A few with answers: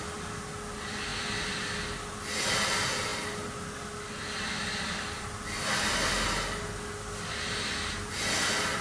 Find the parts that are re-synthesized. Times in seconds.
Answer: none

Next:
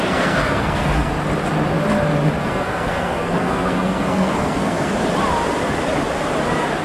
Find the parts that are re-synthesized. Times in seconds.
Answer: 0.0-1.1 (codec, SNAC); 2.4-4.9